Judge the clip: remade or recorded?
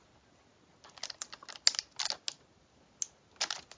recorded